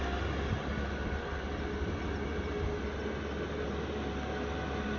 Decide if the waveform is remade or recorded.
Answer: recorded